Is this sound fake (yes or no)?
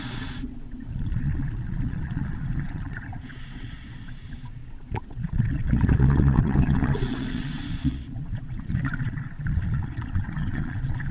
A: yes